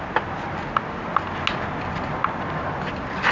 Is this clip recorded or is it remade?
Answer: recorded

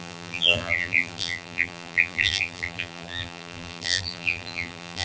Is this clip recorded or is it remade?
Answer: remade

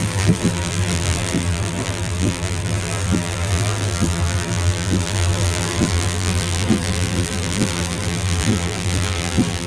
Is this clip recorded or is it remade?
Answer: remade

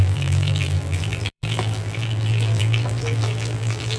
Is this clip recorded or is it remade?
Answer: remade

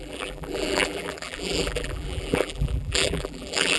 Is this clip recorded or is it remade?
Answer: remade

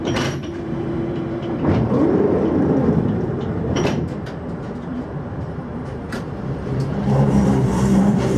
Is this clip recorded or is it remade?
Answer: remade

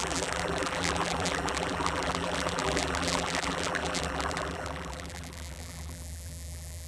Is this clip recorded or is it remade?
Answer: remade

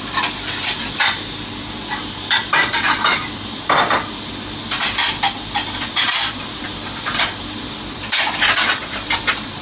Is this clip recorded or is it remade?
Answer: remade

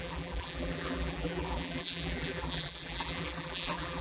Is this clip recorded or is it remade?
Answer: remade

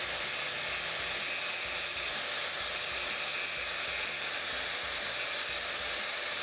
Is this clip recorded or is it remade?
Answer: recorded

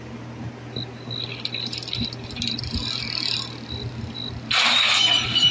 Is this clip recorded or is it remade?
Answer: recorded